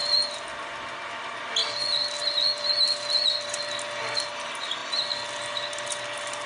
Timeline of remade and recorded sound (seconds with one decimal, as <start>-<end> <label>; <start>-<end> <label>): 0.0-6.5 recorded